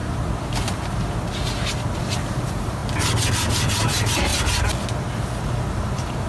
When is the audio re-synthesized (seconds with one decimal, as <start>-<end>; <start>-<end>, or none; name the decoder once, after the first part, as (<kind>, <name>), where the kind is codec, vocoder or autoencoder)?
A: 2.0-2.8 (vocoder, BigVGAN v2); 3.3-4.3; 5.5-6.3